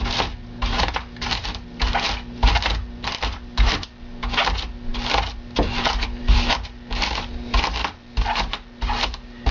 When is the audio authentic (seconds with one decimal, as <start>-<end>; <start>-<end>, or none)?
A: 0.0-9.5

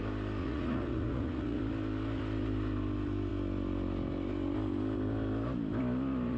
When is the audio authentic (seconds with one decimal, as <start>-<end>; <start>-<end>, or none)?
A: 0.0-0.4; 1.6-6.4

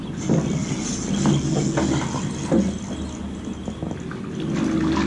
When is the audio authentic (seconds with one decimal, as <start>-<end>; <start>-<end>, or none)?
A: 0.0-5.1

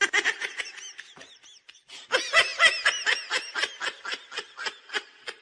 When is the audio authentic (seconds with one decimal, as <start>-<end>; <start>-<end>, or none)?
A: 0.0-5.4

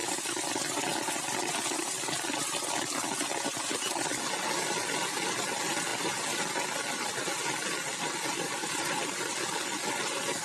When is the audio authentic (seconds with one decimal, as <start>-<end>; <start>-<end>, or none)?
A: 0.0-10.4

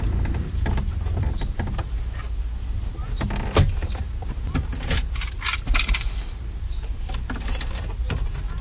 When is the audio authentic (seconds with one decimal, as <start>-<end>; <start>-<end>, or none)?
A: 0.0-8.6